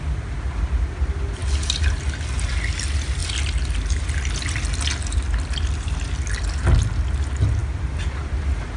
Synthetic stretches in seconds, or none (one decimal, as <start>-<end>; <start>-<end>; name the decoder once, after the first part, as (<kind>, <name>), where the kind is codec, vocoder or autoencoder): none